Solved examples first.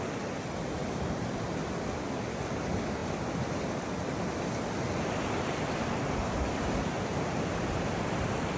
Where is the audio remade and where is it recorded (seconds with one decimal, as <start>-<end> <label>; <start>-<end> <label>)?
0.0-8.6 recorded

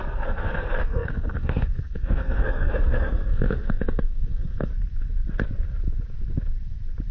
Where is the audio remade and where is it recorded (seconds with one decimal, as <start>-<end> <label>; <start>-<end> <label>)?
0.0-4.7 remade; 4.7-7.1 recorded

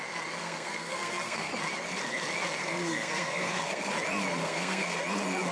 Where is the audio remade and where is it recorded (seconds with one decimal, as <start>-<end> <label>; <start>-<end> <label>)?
0.0-0.4 recorded; 0.4-1.5 remade; 1.5-2.6 recorded; 2.6-3.9 remade; 3.9-4.4 recorded; 4.4-5.0 remade; 5.0-5.5 recorded